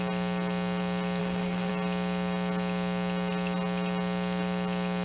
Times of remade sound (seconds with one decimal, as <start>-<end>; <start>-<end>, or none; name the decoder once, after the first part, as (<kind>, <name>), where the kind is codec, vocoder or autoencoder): 1.2-1.7 (codec, SNAC)